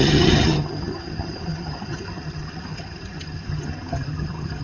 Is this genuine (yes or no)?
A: no